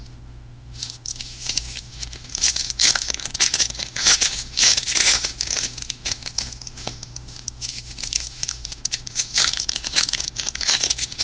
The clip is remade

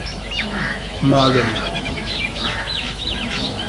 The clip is remade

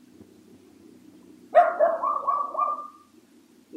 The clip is recorded